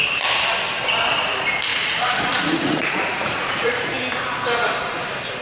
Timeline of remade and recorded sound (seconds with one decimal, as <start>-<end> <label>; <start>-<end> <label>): 0.0-1.7 recorded; 1.7-3.9 remade; 3.9-5.4 recorded